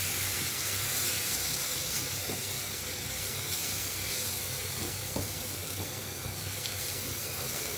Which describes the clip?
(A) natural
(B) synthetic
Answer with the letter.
B